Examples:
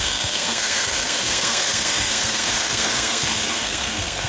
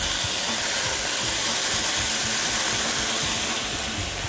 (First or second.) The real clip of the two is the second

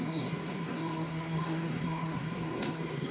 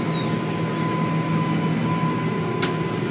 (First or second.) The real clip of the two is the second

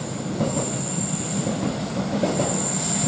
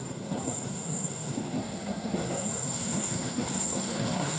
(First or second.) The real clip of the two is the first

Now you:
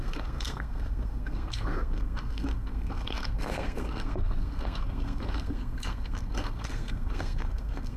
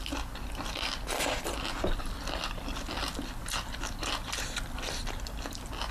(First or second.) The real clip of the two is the second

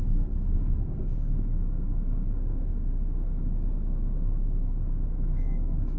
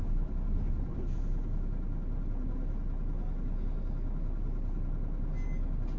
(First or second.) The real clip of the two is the second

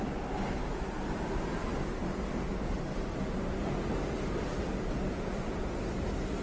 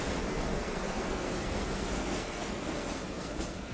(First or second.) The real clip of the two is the first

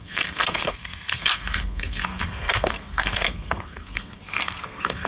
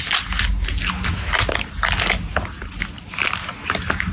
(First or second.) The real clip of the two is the second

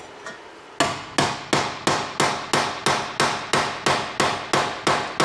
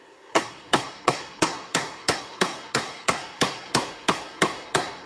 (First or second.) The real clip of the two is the first